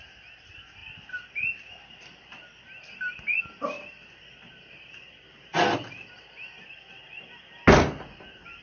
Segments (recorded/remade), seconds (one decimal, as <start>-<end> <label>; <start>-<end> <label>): 0.0-8.6 recorded